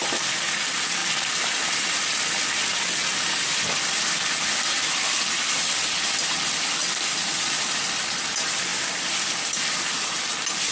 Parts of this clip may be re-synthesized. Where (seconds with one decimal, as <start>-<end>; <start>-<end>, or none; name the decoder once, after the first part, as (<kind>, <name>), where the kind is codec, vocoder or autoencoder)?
6.8-7.8 (vocoder, BigVGAN v2); 8.7-9.6